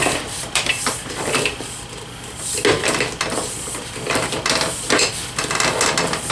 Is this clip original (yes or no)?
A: yes